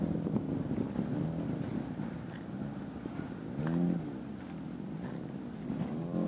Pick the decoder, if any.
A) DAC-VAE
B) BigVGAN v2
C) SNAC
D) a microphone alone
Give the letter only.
D